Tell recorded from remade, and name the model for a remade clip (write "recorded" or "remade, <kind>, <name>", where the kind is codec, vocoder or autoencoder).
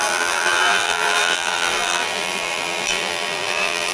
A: remade, vocoder, BigVGAN v2